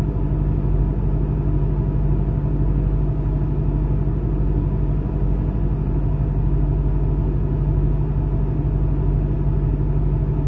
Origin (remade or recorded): recorded